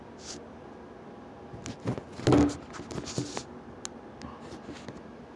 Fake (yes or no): no